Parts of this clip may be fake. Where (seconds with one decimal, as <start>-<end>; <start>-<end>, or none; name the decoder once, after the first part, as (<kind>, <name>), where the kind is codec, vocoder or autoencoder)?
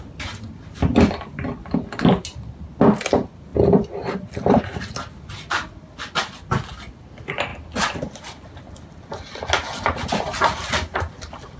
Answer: none